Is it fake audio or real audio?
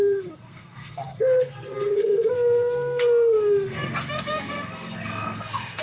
fake